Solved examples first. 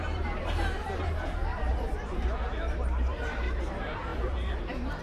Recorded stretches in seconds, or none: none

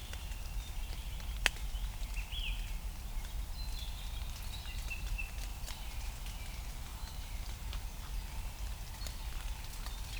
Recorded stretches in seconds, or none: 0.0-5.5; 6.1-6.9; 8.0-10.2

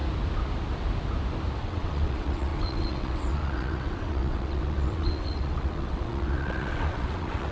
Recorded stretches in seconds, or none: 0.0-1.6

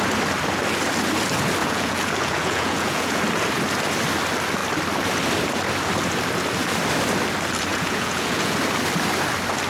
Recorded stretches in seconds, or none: 0.0-1.6; 3.2-7.7; 8.6-9.7

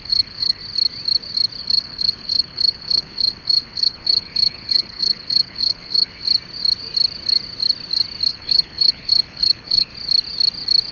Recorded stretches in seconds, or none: 0.6-1.6; 6.2-8.3; 9.9-10.9

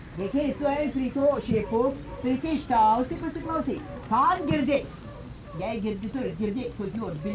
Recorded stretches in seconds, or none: 0.0-7.3

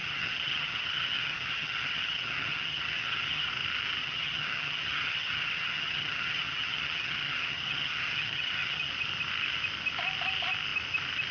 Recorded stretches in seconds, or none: 3.5-4.0; 8.9-11.3